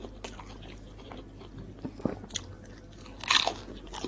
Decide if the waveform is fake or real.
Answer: real